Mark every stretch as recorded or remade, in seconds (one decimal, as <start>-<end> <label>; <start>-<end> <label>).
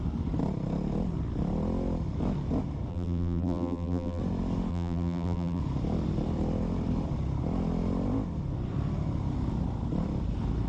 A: 0.0-2.9 recorded; 2.9-4.2 remade; 4.2-4.7 recorded; 4.7-5.6 remade; 5.6-10.7 recorded